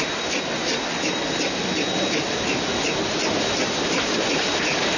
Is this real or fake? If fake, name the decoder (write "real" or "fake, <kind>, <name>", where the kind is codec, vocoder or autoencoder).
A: real